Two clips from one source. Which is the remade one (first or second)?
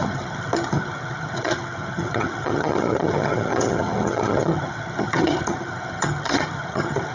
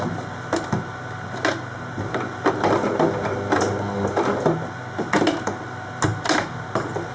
first